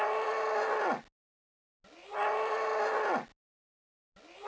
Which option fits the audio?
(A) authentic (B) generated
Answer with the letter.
A